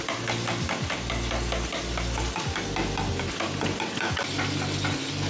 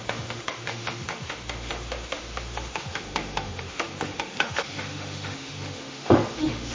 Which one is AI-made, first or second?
second